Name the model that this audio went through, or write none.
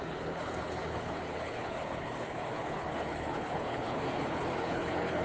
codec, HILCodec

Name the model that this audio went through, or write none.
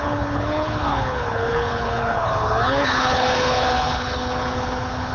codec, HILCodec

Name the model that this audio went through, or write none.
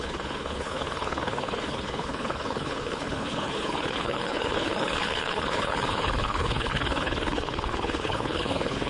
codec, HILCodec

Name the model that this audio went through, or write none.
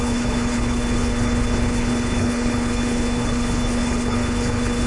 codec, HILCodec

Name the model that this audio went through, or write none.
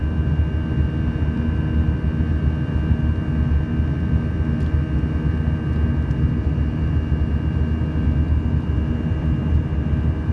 none